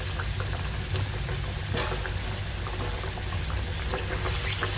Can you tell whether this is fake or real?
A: real